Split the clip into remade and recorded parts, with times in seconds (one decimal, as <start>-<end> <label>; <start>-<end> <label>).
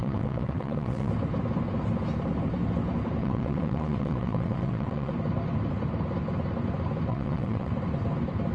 0.0-1.1 remade; 1.1-3.2 recorded; 3.2-5.1 remade; 5.1-7.1 recorded; 7.1-7.7 remade; 7.7-8.5 recorded